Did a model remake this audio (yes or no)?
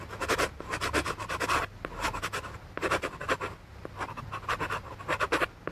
no